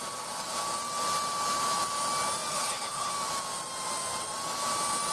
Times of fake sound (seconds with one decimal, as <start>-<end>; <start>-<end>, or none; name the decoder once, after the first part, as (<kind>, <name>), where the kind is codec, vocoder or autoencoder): 2.5-3.1 (codec, HILCodec)